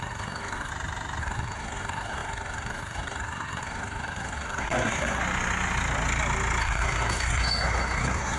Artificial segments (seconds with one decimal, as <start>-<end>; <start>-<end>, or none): 0.0-0.7; 1.2-5.2; 6.6-8.4

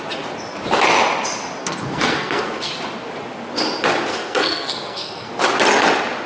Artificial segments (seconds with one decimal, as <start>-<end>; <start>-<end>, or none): 1.6-2.7; 4.1-5.3

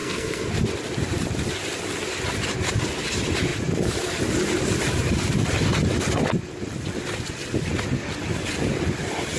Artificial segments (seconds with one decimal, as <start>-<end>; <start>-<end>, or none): 0.0-0.5